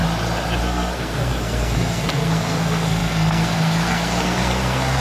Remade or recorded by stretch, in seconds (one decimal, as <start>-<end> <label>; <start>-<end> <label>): 0.0-0.6 recorded; 0.6-5.0 remade